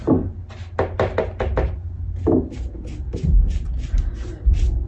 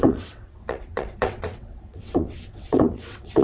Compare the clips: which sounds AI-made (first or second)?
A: second